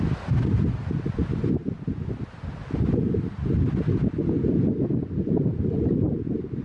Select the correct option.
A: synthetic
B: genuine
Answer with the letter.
B